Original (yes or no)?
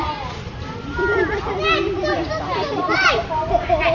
yes